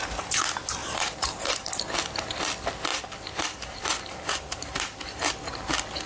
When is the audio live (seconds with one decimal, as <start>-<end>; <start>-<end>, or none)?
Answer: 0.0-0.8; 1.8-2.9; 5.3-6.1